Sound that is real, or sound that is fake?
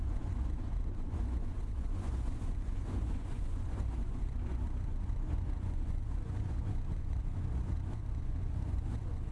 fake